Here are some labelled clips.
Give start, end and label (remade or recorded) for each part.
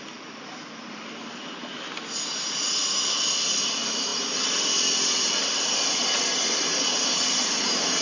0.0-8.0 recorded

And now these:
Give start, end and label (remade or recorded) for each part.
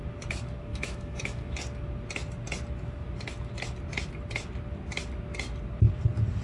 0.0-0.7 recorded; 0.7-1.6 remade; 1.6-6.4 recorded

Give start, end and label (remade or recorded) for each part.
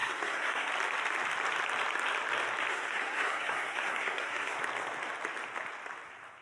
0.0-0.7 remade; 0.7-2.7 recorded; 2.7-4.6 remade; 4.6-6.4 recorded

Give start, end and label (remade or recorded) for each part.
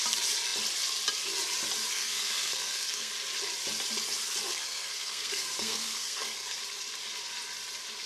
0.0-1.9 recorded; 1.9-3.1 remade; 3.1-4.5 recorded; 4.5-6.6 remade; 6.6-8.1 recorded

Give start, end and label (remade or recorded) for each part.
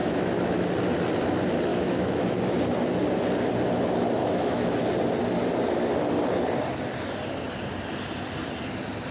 0.0-0.7 remade; 0.7-1.7 recorded; 1.7-2.4 remade; 2.4-4.2 recorded; 4.2-4.9 remade; 4.9-9.1 recorded